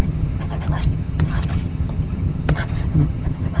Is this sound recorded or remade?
remade